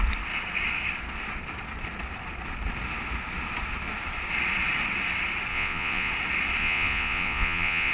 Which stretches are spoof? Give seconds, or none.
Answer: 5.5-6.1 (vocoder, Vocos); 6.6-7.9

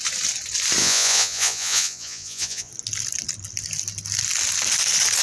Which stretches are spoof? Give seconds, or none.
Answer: 0.8-2.7 (vocoder, Vocos)

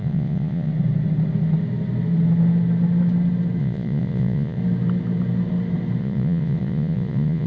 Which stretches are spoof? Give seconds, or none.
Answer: 0.0-0.7 (vocoder, Vocos); 3.6-4.6; 6.0-7.5

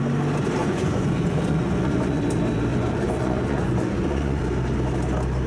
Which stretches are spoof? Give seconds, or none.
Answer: 0.6-2.2 (vocoder, Vocos); 2.7-4.4

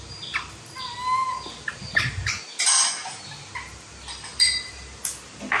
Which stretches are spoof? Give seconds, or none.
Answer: none

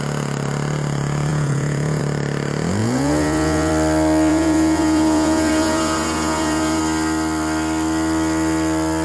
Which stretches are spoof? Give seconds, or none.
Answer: 1.3-2.0 (vocoder, Vocos); 2.8-3.7; 4.3-6.8